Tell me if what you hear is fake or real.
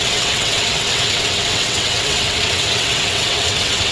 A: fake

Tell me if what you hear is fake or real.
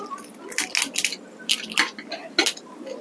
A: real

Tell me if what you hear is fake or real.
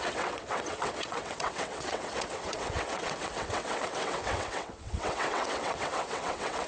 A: fake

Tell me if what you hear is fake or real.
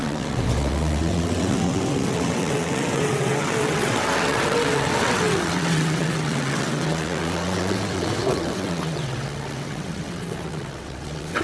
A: fake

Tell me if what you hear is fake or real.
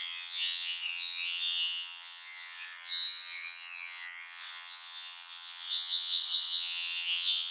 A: fake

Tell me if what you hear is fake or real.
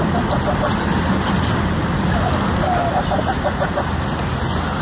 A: real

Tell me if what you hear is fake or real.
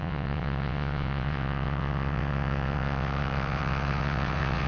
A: fake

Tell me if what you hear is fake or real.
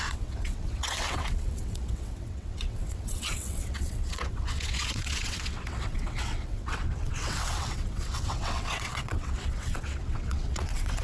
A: fake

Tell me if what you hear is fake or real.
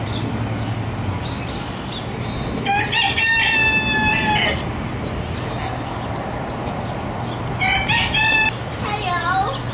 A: real